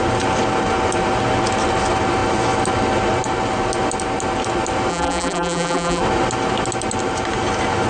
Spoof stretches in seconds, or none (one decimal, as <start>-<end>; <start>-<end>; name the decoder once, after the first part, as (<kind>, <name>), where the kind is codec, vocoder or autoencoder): 4.9-6.0 (vocoder, BigVGAN v2)